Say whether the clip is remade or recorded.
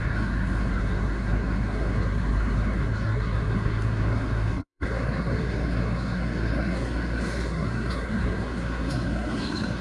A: remade